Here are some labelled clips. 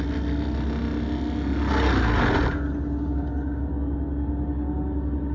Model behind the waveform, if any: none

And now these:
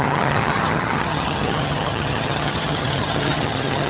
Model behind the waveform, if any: vocoder, HiFi-GAN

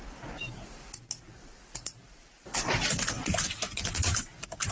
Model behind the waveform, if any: none